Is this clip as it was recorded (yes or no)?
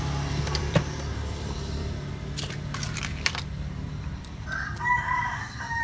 no